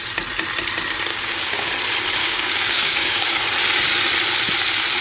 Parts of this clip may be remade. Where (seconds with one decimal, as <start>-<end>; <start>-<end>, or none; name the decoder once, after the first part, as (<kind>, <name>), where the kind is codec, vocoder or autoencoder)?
1.1-1.7 (codec, DAC); 2.2-3.4